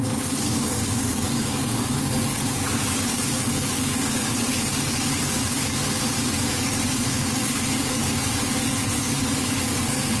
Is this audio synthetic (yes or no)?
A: yes